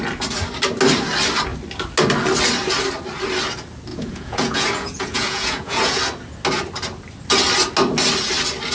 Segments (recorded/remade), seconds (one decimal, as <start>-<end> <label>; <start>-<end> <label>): 0.0-3.9 recorded; 3.9-6.0 remade; 6.0-8.7 recorded